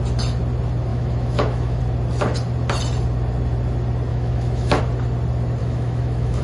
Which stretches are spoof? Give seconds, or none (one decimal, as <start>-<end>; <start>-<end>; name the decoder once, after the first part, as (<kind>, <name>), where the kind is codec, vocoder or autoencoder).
0.9-1.8 (autoencoder, DAC-VAE); 4.1-4.8; 5.6-6.4